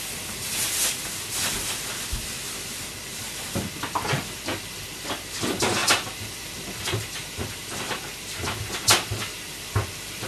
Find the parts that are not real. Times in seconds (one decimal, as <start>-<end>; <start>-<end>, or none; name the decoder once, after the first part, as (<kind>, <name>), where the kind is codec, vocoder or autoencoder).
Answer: 5.8-6.5 (vocoder, BigVGAN v2)